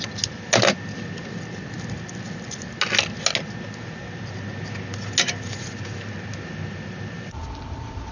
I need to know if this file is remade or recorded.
recorded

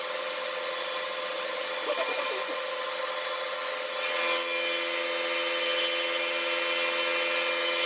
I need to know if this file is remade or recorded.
recorded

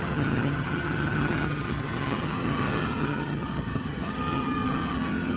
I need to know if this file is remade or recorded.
remade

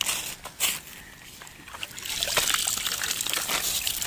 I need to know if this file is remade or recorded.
remade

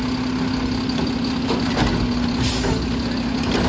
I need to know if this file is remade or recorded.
recorded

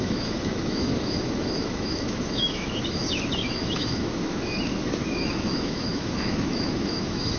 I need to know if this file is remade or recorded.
remade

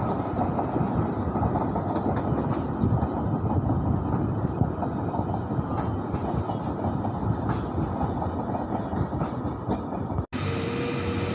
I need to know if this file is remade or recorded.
recorded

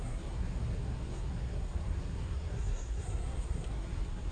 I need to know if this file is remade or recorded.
remade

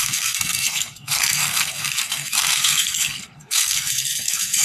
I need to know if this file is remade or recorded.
remade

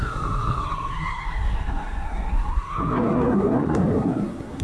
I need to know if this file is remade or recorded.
remade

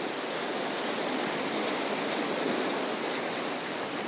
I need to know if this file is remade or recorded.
recorded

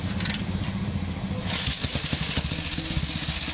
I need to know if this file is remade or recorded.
recorded